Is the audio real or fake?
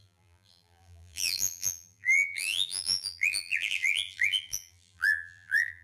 fake